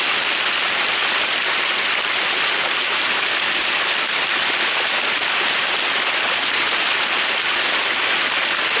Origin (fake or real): real